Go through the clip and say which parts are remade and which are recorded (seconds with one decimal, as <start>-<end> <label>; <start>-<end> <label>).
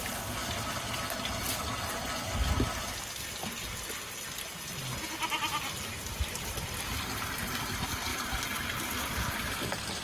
0.0-0.4 recorded; 0.4-1.0 remade; 1.0-8.1 recorded; 8.1-8.8 remade; 8.8-10.0 recorded